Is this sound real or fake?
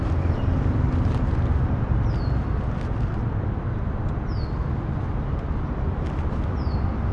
real